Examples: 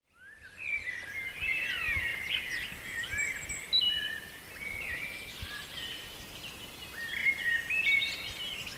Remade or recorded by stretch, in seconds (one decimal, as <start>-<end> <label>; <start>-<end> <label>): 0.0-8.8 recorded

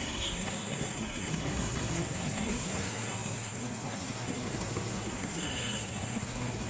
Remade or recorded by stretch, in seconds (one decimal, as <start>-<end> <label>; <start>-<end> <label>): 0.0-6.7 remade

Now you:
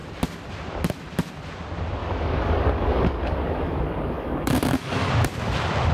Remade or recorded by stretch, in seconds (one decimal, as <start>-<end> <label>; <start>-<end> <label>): 0.0-2.0 recorded; 2.0-5.1 remade; 5.1-5.9 recorded